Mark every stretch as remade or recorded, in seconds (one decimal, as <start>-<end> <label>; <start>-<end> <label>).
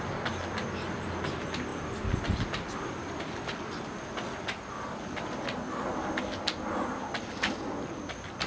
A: 0.0-8.5 recorded